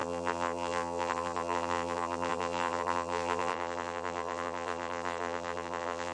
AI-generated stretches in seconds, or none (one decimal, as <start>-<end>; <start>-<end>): 0.0-6.1